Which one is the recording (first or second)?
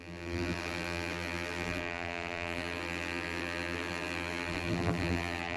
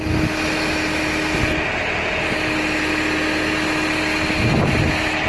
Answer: second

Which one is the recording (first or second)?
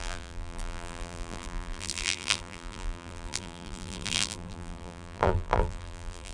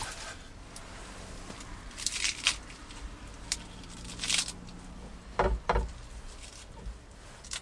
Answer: second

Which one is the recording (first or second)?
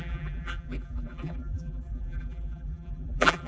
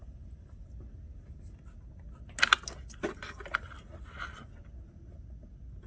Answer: second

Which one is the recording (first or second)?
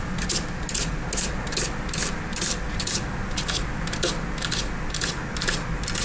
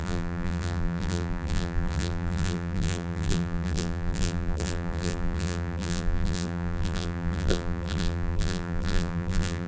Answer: first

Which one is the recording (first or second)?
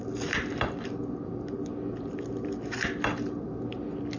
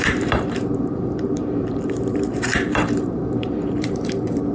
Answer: first